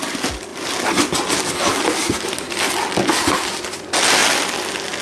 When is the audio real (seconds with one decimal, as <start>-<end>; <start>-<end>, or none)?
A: 0.0-5.0